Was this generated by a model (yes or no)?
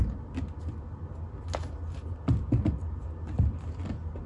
no